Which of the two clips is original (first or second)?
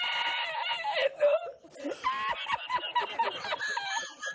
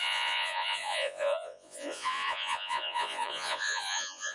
first